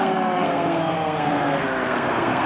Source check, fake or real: fake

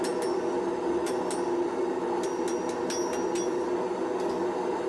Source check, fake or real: real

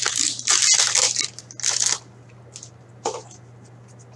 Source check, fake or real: real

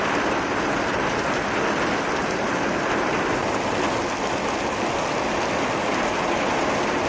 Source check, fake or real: real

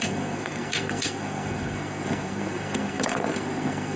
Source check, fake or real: fake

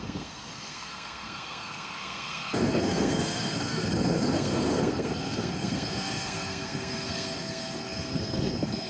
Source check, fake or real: fake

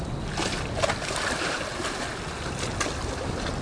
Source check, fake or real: real